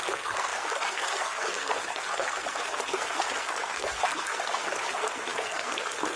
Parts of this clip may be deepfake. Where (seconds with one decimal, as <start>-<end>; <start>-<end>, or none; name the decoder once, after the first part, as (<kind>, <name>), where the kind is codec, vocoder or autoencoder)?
0.0-6.2 (codec, SNAC)